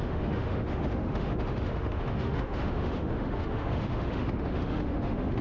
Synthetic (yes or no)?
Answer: yes